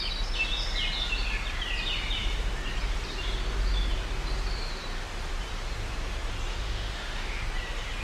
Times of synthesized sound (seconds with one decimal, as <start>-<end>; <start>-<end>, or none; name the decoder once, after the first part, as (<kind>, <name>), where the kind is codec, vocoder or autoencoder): 6.5-7.4 (autoencoder, DAC-VAE)